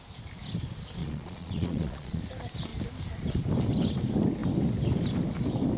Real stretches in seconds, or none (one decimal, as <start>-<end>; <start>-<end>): 0.0-1.0; 2.2-5.8